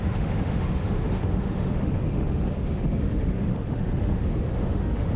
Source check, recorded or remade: remade